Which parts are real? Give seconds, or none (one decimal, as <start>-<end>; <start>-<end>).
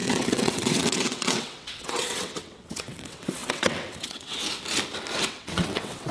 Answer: 4.4-5.3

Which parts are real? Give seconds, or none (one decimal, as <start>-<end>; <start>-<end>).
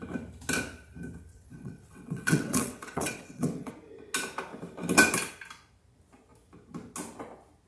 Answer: 0.0-1.3; 3.7-7.7